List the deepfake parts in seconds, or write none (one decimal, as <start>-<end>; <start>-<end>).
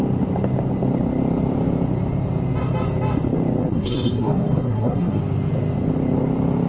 3.6-5.2